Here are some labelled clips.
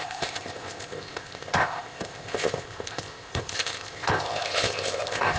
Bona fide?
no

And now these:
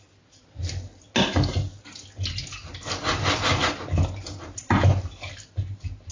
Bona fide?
yes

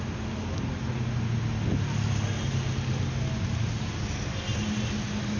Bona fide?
yes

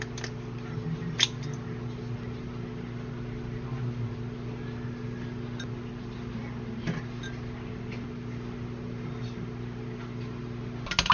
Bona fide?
yes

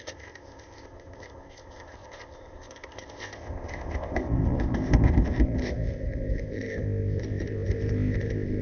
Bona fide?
no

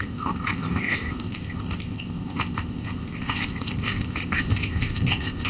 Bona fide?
no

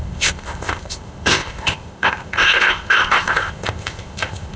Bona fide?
no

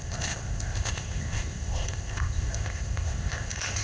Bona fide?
no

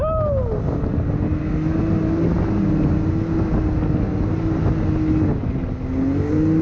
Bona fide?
yes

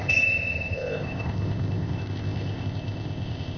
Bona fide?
no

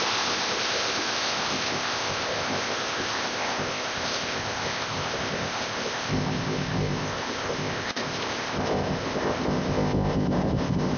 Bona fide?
no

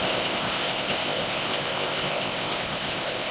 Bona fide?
no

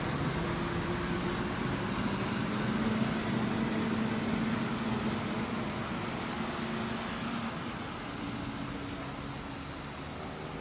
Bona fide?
yes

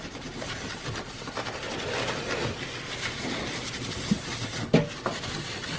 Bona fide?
yes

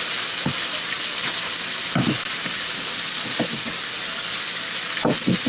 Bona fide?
yes